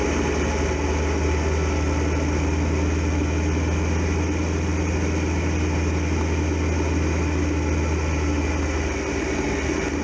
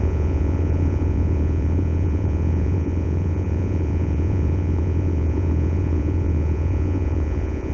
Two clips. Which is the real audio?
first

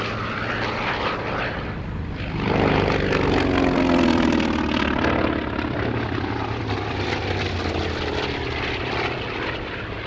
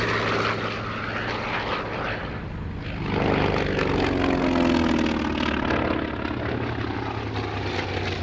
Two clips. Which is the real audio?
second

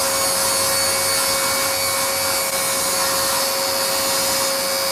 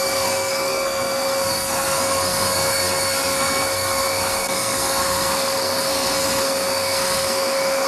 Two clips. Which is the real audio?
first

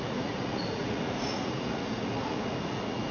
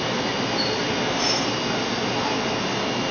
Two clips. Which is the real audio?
second